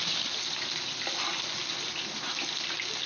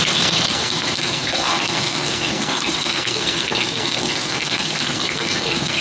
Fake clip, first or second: second